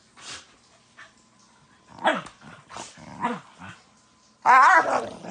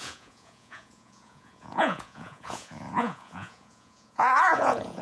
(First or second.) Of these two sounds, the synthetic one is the second